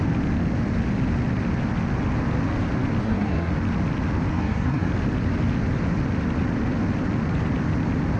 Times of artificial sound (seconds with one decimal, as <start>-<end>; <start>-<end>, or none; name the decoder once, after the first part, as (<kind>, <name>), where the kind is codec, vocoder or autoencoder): 3.0-3.5 (codec, SNAC); 4.3-4.9